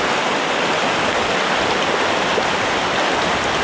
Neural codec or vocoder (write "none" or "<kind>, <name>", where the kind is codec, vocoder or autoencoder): none